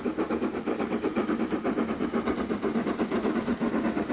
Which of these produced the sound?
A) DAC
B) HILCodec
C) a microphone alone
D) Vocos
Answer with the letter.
C